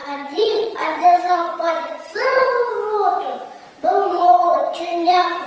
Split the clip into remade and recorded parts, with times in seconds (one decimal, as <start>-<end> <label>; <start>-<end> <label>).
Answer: 0.0-2.7 remade; 2.7-4.1 recorded; 4.1-5.5 remade